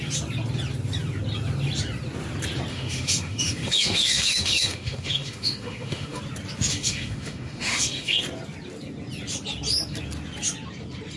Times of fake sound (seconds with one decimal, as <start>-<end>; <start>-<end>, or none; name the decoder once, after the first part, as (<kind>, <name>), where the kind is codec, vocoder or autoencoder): 2.7-6.2 (autoencoder, DAC-VAE); 6.7-8.2